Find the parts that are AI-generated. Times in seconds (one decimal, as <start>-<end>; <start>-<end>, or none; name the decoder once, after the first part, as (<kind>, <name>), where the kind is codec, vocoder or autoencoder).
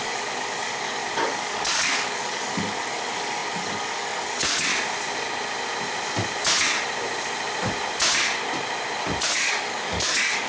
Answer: 0.0-4.7 (codec, DAC); 9.2-10.5